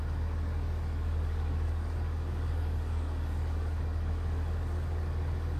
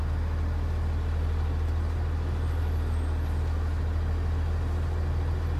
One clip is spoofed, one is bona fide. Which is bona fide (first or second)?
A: second